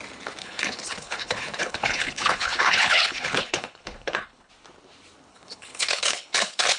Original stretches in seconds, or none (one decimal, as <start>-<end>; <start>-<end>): 0.0-0.4; 4.5-5.3